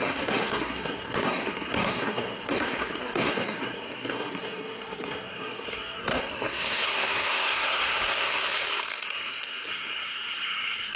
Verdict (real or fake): fake